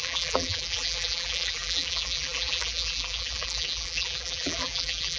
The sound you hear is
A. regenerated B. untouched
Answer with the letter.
A